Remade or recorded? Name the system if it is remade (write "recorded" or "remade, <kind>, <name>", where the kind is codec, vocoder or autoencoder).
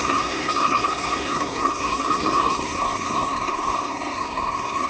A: remade, codec, SNAC